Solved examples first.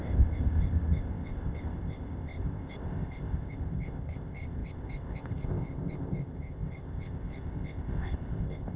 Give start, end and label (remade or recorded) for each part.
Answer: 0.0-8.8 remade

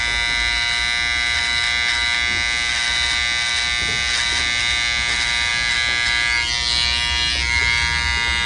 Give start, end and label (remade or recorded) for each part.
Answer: 0.0-8.5 recorded

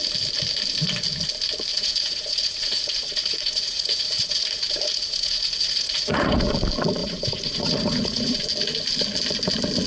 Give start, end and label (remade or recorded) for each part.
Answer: 0.0-1.7 recorded; 1.7-6.5 remade; 6.5-7.0 recorded; 7.0-8.4 remade; 8.4-9.9 recorded

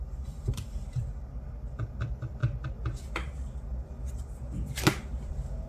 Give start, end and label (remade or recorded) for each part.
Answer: 0.0-1.0 remade; 1.0-1.8 recorded; 1.8-2.4 remade; 2.4-5.3 recorded; 5.3-5.7 remade

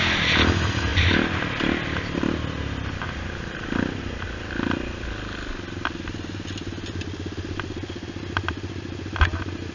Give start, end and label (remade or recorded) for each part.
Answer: 0.0-9.7 recorded

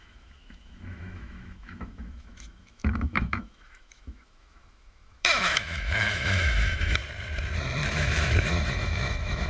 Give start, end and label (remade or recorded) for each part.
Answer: 0.0-7.0 remade; 7.0-7.9 recorded; 7.9-9.5 remade

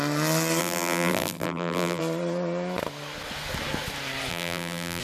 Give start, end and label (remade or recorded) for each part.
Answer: 0.0-0.6 recorded; 0.6-2.0 remade; 2.0-4.3 recorded; 4.3-5.0 remade

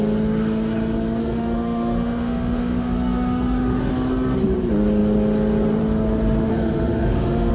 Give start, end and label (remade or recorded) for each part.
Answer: 0.0-1.2 recorded; 1.2-3.9 remade; 3.9-6.5 recorded; 6.5-7.5 remade